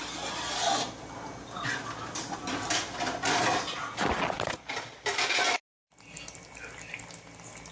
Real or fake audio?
real